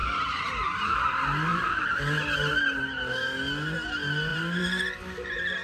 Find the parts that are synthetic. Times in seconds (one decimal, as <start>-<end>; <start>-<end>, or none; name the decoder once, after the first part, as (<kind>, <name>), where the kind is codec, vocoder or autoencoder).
1.5-2.0 (vocoder, BigVGAN v2); 4.3-5.0